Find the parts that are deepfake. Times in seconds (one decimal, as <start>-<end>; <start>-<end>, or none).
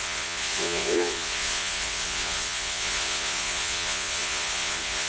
0.0-5.1